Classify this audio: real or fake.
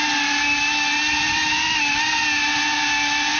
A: real